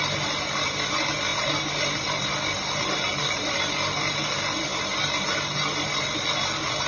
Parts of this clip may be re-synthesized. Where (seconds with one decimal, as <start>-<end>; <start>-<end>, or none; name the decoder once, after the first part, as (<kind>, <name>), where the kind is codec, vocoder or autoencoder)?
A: none